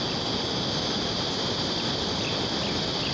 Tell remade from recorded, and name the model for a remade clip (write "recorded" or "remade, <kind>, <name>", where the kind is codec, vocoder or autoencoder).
recorded